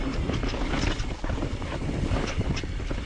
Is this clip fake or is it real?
real